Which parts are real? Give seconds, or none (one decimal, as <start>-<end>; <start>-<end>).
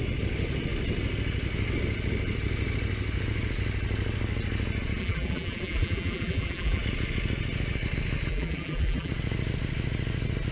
0.0-5.0; 6.8-8.3; 9.1-10.5